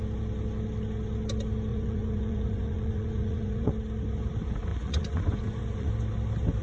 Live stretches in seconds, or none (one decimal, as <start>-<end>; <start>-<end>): 0.0-1.7; 3.7-4.7; 5.9-6.6